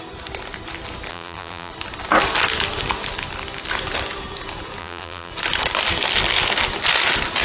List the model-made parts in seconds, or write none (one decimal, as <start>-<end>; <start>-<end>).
1.1-1.7; 4.8-5.3